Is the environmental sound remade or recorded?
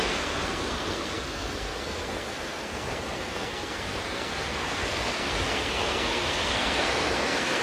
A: remade